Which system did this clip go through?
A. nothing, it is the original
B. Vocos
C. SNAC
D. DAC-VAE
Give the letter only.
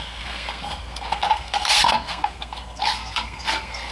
C